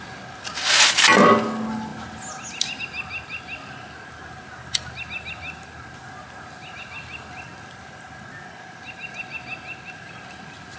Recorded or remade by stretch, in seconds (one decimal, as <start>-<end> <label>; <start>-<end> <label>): 0.0-10.8 recorded